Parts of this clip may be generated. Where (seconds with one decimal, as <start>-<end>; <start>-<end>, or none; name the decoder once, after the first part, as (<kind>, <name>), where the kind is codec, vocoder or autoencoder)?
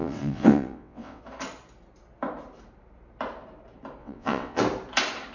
0.0-1.2 (vocoder, WaveNeXt); 4.0-4.6